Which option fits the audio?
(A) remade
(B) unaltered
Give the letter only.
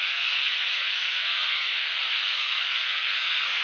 A